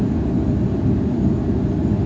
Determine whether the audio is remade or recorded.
recorded